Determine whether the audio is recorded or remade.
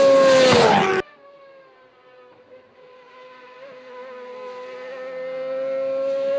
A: recorded